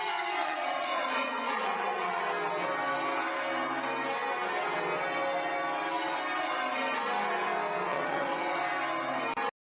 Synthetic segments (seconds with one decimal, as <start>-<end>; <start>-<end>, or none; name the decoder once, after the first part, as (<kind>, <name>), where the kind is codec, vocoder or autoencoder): 0.4-2.2 (vocoder, WaveNeXt); 7.9-8.6